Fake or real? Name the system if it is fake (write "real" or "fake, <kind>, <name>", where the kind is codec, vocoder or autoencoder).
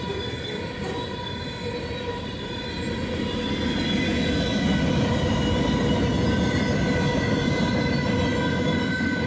real